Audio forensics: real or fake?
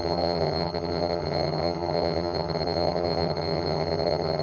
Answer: fake